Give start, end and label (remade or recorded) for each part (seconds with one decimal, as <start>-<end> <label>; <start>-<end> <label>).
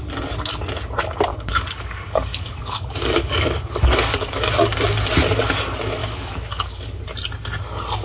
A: 0.0-1.3 recorded; 1.3-4.5 remade; 4.5-6.0 recorded; 6.0-7.0 remade; 7.0-8.0 recorded